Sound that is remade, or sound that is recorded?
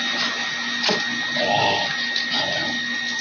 recorded